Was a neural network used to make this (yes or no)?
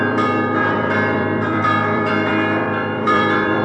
yes